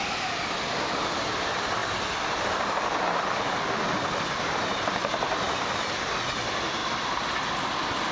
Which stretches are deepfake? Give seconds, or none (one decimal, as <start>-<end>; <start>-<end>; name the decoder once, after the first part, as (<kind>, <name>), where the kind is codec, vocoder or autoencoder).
0.0-1.8 (vocoder, BigVGAN v2); 2.5-6.8; 7.5-8.1